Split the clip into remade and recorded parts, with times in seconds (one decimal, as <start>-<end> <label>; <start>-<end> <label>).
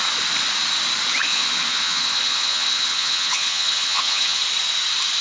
0.0-1.3 recorded; 1.3-4.4 remade; 4.4-5.2 recorded